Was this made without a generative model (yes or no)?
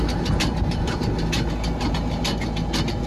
yes